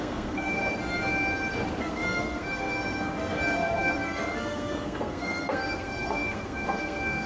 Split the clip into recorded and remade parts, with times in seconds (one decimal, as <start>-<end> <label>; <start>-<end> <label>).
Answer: 0.0-0.6 remade; 0.6-1.8 recorded; 1.8-7.3 remade